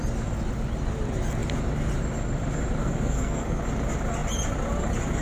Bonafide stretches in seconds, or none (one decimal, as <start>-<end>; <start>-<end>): 0.0-2.8; 3.6-5.2